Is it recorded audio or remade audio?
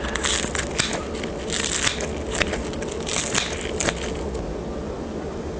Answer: recorded